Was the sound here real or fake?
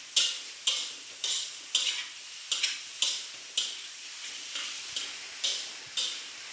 real